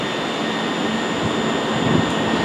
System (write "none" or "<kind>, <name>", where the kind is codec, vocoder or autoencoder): none